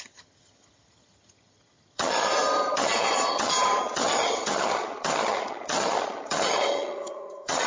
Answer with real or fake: fake